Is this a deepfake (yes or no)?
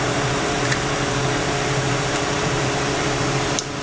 yes